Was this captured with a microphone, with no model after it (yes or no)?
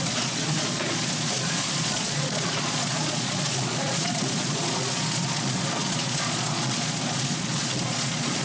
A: no